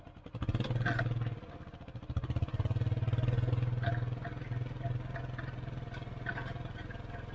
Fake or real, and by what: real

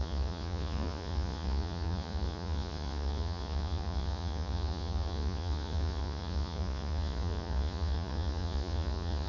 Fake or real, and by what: fake, vocoder, Vocos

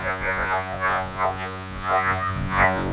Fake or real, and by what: fake, vocoder, Vocos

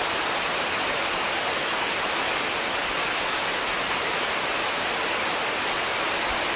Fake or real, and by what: real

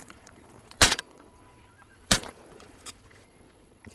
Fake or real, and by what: fake, vocoder, Vocos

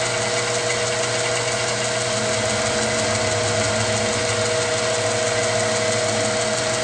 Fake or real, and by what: real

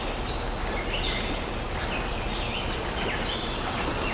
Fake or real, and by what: real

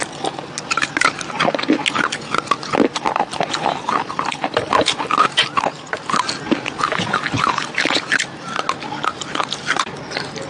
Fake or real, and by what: real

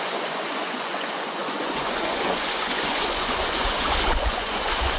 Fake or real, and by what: fake, vocoder, Vocos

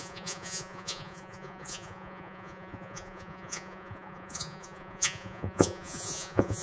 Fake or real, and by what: fake, vocoder, Vocos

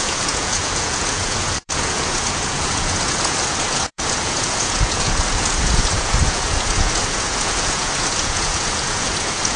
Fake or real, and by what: fake, vocoder, Vocos